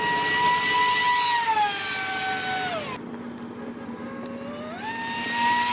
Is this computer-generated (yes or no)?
no